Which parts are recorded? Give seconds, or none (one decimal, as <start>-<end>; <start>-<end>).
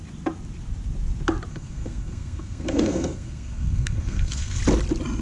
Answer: 0.0-1.5; 4.6-5.2